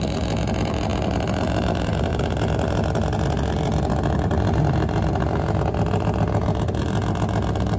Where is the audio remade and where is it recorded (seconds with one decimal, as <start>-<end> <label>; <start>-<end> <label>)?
0.0-7.8 recorded